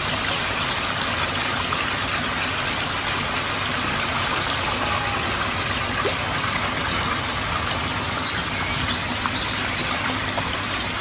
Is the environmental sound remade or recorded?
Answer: recorded